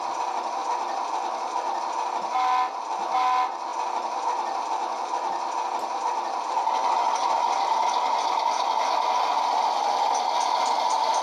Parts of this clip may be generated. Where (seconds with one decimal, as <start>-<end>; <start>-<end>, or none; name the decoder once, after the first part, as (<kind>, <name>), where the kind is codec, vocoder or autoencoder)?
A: none